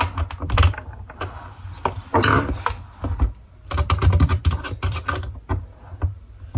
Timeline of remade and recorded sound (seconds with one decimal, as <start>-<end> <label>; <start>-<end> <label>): 0.0-6.6 recorded